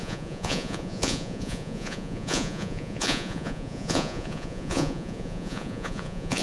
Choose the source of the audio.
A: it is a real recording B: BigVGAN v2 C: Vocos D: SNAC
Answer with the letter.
C